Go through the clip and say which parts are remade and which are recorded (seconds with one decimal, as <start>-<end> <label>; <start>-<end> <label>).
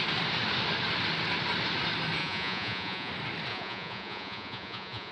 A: 0.0-2.2 recorded; 2.2-3.1 remade; 3.1-3.5 recorded; 3.5-5.1 remade